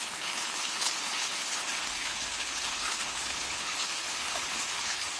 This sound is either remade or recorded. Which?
remade